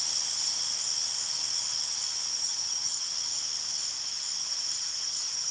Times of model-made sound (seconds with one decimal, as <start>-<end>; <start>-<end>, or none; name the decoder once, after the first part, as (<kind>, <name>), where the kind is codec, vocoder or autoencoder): 2.3-3.1 (vocoder, HiFi-GAN); 4.4-5.5